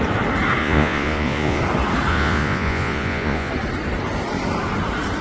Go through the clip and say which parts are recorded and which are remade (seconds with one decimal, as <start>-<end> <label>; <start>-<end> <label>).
0.0-0.6 recorded; 0.6-1.6 remade; 1.6-2.1 recorded; 2.1-3.5 remade; 3.5-5.2 recorded